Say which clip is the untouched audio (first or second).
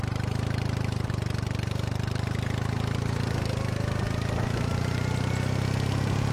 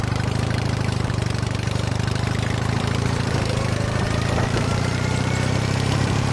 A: first